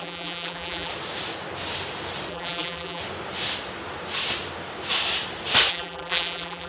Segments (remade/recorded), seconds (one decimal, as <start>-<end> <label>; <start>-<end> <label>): 0.0-0.9 remade; 0.9-2.3 recorded; 2.3-3.0 remade; 3.0-5.7 recorded; 5.7-6.7 remade